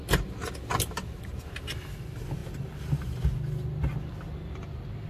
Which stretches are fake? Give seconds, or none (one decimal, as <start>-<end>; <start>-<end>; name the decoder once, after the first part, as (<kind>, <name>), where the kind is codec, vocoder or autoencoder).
none